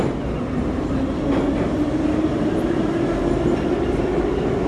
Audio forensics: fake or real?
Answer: real